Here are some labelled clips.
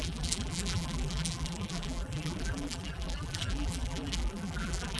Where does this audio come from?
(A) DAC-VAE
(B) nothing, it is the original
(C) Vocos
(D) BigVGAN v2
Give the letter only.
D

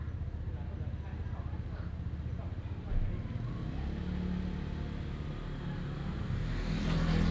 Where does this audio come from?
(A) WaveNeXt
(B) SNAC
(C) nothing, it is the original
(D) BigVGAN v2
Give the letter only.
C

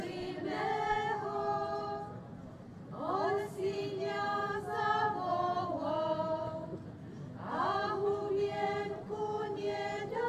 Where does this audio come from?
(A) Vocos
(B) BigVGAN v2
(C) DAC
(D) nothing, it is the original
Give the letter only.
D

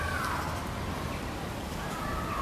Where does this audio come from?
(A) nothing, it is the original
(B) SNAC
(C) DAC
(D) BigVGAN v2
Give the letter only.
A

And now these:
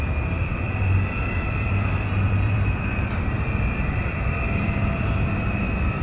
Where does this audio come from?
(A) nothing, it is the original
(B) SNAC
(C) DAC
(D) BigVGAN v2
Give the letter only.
D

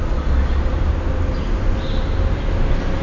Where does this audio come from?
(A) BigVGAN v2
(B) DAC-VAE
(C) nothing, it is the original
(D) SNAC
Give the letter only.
C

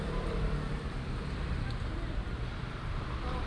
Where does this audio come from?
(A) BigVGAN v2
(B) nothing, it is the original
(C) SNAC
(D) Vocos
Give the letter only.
A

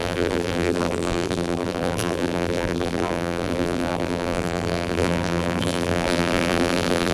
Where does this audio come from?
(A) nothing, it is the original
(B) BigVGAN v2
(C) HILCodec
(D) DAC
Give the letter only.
B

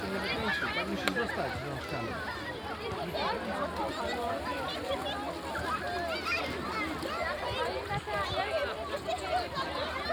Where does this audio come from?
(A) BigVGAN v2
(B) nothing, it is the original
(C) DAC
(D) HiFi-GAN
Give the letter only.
B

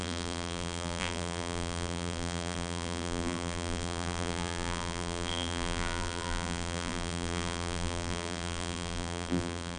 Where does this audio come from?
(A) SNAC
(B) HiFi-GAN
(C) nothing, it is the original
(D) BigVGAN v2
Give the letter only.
D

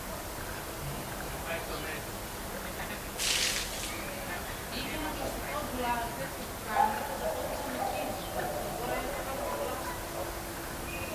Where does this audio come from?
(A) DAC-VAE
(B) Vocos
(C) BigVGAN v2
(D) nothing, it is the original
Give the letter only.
D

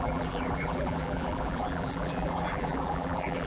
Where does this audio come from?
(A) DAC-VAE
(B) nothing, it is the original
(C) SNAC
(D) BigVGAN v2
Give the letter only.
D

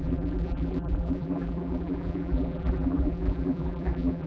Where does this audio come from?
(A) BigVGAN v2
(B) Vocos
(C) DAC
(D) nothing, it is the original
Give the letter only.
A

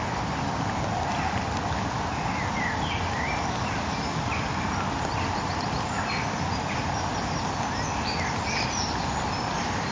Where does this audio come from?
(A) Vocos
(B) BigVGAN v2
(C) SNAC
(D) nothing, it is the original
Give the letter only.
D